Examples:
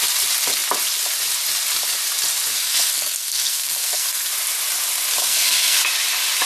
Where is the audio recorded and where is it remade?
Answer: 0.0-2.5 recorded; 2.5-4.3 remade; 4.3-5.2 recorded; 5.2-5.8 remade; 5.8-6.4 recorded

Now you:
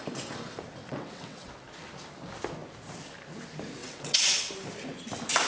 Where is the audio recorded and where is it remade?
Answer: 0.0-0.8 recorded; 0.8-1.5 remade; 1.5-3.8 recorded; 3.8-4.5 remade; 4.5-5.5 recorded

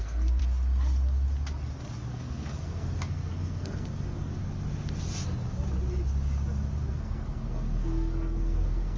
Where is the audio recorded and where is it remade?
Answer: 0.0-0.4 remade; 0.4-2.1 recorded; 2.1-4.3 remade; 4.3-6.9 recorded; 6.9-9.0 remade

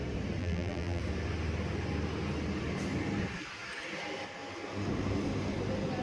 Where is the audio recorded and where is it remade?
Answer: 0.0-0.4 recorded; 0.4-1.0 remade; 1.0-6.0 recorded

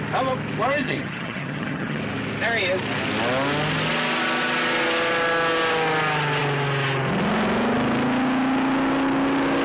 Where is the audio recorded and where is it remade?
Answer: 0.0-0.8 recorded; 0.8-2.0 remade; 2.0-9.6 recorded

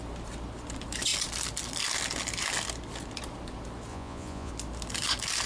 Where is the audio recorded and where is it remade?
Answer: 0.0-3.9 recorded; 3.9-4.5 remade; 4.5-5.5 recorded

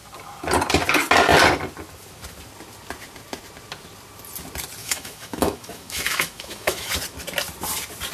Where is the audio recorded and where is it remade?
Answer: 0.0-4.8 recorded; 4.8-6.9 remade; 6.9-8.1 recorded

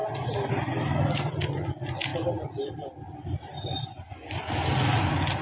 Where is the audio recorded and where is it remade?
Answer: 0.0-5.4 recorded